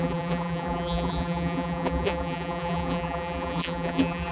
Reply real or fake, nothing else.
fake